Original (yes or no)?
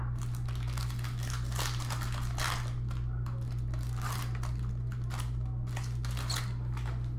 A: yes